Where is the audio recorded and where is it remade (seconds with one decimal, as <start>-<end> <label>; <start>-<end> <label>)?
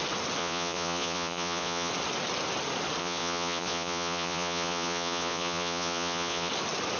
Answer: 0.0-0.4 recorded; 0.4-1.9 remade; 1.9-3.0 recorded; 3.0-6.5 remade; 6.5-7.0 recorded